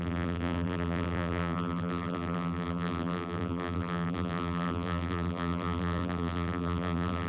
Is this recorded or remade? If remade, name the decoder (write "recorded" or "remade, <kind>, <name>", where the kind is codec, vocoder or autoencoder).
remade, vocoder, BigVGAN v2